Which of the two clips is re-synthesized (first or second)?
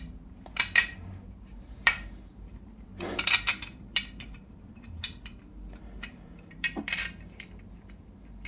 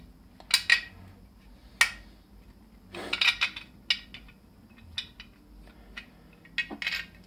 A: first